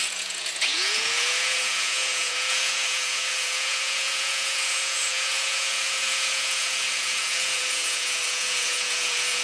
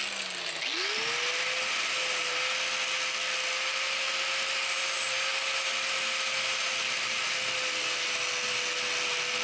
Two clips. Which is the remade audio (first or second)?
first